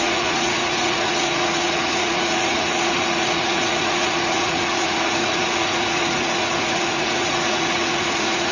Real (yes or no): no